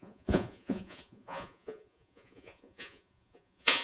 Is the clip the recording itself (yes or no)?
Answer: no